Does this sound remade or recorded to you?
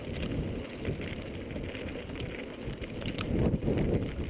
recorded